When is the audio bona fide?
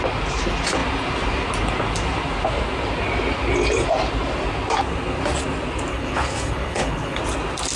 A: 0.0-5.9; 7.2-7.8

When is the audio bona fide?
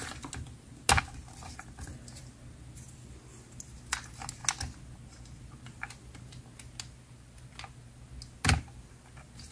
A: 0.0-9.5